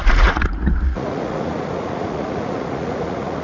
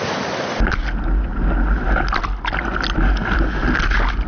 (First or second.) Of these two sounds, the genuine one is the second